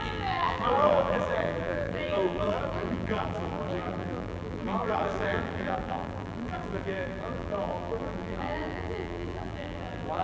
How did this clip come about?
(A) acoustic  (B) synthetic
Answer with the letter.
B